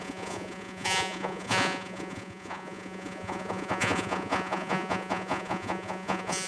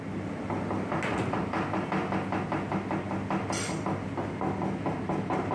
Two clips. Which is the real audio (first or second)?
second